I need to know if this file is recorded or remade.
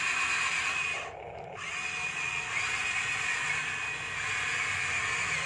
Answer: recorded